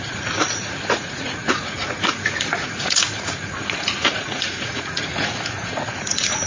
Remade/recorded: remade